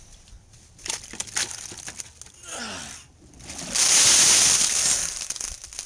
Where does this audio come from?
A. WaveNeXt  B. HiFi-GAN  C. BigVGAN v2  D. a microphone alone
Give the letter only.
D